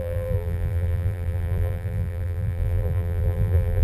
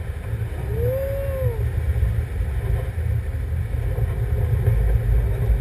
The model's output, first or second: first